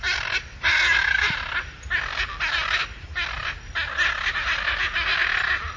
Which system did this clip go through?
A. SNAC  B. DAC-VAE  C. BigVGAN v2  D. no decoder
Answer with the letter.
D